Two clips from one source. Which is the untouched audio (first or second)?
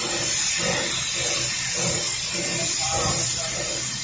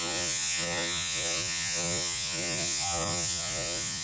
first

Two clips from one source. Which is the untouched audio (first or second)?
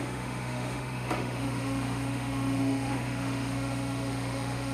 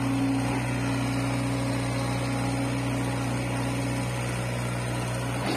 second